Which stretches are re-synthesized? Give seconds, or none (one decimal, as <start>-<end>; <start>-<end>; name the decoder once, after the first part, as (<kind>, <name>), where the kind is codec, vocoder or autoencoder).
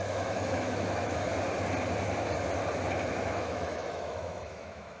0.0-1.3 (autoencoder, DAC-VAE); 3.1-5.0